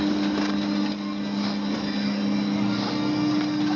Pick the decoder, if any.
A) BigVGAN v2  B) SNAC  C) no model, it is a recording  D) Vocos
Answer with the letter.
C